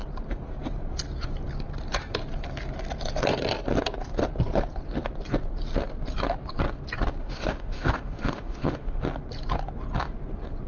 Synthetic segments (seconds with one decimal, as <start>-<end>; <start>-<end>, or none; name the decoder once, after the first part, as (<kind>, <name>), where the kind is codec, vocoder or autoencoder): 7.2-9.0 (autoencoder, DAC-VAE)